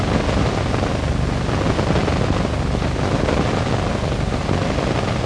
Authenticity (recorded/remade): recorded